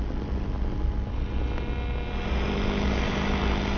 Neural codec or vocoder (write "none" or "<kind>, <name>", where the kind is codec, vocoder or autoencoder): none